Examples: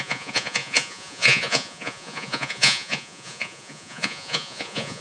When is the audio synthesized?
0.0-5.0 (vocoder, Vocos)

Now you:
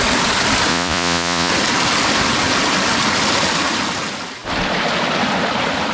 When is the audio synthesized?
0.7-1.5 (vocoder, Vocos)

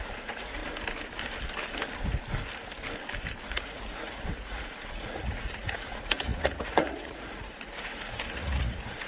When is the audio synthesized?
0.0-0.6 (vocoder, Vocos); 3.5-9.1

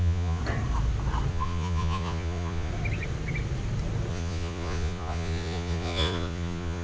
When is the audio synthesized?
0.0-0.4 (vocoder, Vocos); 1.3-2.7; 4.1-6.8

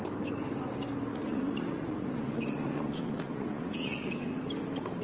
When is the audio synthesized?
1.1-4.1 (vocoder, Vocos)